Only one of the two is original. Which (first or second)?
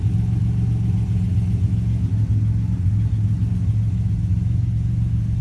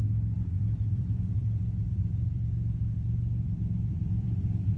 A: first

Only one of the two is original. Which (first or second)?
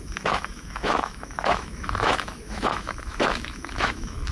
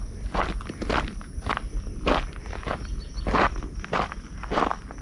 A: second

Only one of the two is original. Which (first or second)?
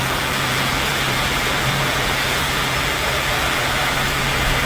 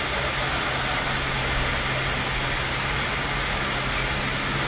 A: second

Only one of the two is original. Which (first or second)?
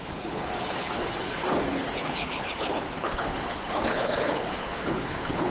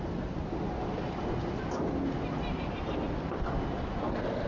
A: second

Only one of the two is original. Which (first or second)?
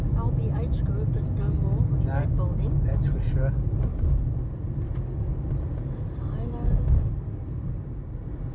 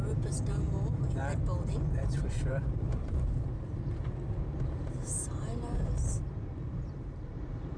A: first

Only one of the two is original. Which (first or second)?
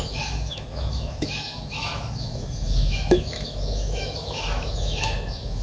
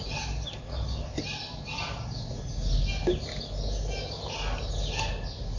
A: second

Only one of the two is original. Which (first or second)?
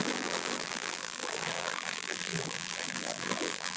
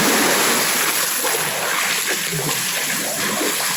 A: second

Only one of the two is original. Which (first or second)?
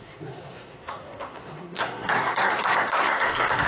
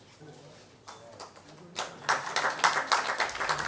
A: second